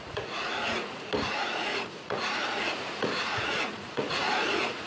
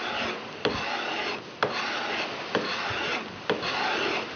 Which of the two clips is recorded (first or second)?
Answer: second